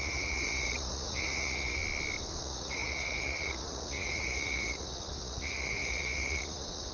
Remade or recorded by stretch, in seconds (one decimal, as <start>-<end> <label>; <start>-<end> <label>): 0.0-1.8 remade; 1.8-2.4 recorded; 2.4-6.9 remade

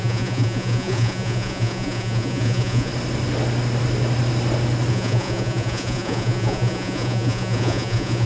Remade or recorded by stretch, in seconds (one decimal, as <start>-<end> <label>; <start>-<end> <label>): 0.0-2.9 remade; 2.9-4.9 recorded; 4.9-8.3 remade